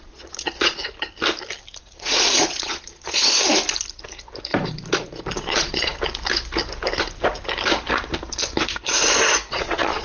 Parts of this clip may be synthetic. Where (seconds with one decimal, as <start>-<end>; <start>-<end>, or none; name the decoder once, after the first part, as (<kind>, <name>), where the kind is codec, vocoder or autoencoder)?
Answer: 0.0-0.8 (vocoder, Vocos); 1.8-3.4; 5.3-5.9; 9.5-10.0